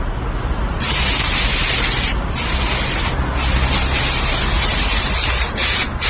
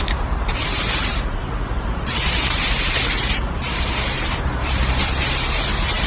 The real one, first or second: first